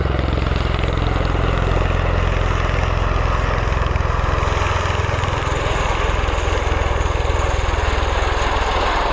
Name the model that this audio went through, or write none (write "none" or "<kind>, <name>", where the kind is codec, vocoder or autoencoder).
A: none